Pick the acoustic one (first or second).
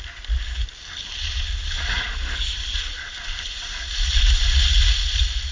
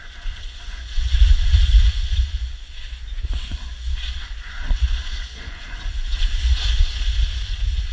first